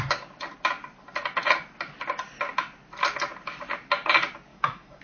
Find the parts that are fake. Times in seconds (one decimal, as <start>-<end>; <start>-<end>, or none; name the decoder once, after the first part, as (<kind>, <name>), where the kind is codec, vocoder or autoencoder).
4.5-5.0 (autoencoder, DAC-VAE)